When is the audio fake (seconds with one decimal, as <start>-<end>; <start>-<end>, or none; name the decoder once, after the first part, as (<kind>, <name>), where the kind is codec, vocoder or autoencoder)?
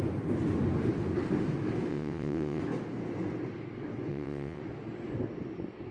1.9-2.6 (vocoder, WaveNeXt); 4.1-4.6